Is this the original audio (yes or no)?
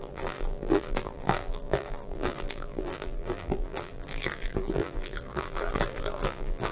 no